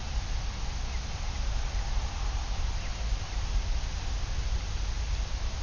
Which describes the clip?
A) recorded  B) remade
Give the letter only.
A